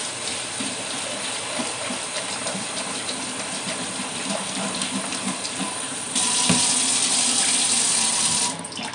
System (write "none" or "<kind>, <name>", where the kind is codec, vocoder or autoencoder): vocoder, BigVGAN v2